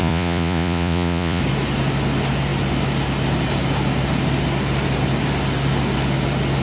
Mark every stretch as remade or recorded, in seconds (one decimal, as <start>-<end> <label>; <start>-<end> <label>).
0.0-1.4 remade; 1.4-6.6 recorded